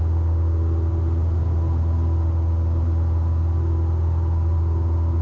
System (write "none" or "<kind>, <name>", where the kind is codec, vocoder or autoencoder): none